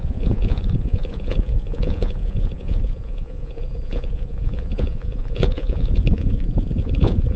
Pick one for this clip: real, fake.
fake